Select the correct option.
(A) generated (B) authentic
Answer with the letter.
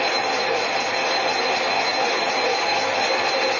B